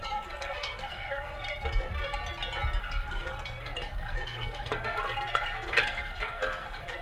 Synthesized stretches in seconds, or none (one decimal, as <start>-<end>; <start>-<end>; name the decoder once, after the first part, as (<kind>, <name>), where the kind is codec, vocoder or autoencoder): 0.0-2.2 (codec, SNAC); 2.8-7.0